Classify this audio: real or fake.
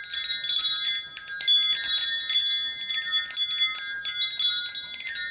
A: real